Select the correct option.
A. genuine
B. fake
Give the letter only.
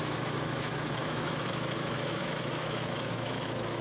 B